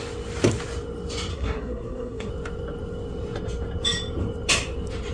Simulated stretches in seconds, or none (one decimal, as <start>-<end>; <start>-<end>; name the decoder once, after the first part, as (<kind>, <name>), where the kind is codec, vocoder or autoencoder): 1.3-2.3 (codec, SNAC)